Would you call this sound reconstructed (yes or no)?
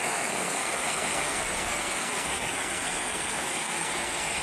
yes